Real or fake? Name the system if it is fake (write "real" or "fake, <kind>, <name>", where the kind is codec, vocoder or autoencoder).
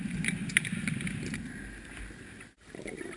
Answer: real